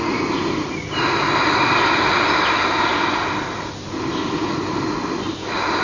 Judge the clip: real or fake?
real